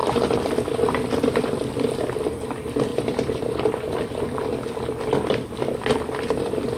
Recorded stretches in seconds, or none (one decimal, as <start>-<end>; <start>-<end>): 0.0-6.8